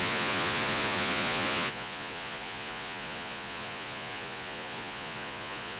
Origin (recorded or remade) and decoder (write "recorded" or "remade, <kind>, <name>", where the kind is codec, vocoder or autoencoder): remade, vocoder, Vocos